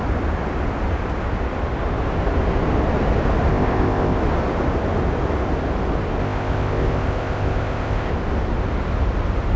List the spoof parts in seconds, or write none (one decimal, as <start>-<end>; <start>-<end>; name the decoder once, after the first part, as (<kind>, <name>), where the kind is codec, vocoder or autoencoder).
3.5-4.2 (codec, ZipCodec); 6.2-8.1